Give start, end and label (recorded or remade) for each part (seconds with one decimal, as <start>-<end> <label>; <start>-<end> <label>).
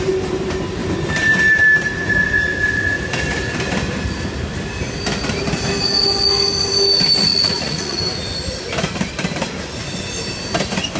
0.0-7.3 recorded; 7.3-8.0 remade; 8.0-11.0 recorded